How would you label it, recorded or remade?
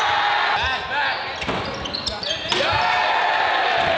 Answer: recorded